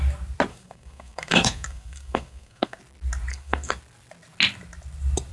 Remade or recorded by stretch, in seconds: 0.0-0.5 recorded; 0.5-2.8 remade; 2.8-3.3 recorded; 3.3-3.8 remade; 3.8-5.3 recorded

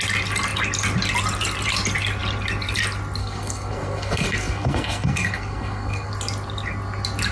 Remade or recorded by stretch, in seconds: 0.0-3.2 recorded; 3.2-6.1 remade; 6.1-7.3 recorded

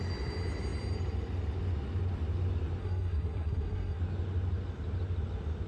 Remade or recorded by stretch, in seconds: 0.0-2.8 recorded; 2.8-4.0 remade; 4.0-5.7 recorded

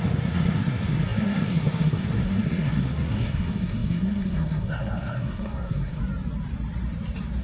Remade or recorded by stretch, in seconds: 0.0-6.0 remade; 6.0-7.4 recorded

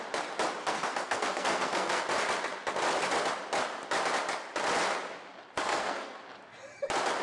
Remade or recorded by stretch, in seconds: 0.0-0.6 recorded; 0.6-2.0 remade; 2.0-5.6 recorded; 5.6-6.2 remade; 6.2-7.2 recorded

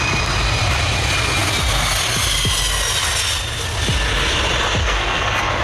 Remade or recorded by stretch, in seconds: 0.0-4.8 recorded; 4.8-5.6 remade

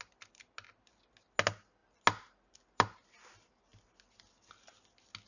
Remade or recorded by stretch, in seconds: 0.0-5.3 recorded

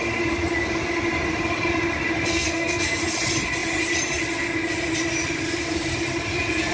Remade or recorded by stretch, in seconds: 0.0-2.3 recorded; 2.3-3.0 remade; 3.0-6.7 recorded